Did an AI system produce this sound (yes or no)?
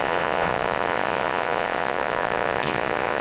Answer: yes